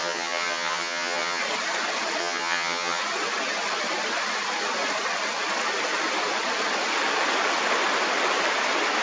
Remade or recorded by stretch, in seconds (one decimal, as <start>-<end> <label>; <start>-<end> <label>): 0.0-1.4 remade; 1.4-2.2 recorded; 2.2-3.0 remade; 3.0-9.0 recorded